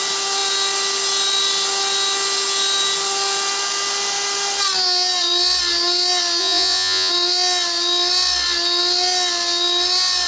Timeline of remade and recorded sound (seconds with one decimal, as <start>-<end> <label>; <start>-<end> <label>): 0.0-6.4 recorded; 6.4-7.1 remade; 7.1-10.3 recorded